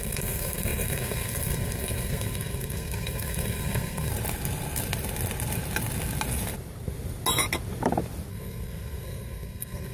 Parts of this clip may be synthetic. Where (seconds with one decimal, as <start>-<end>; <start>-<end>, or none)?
0.0-4.1; 8.3-9.9